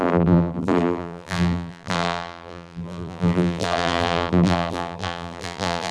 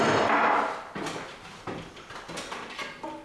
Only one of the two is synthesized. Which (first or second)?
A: first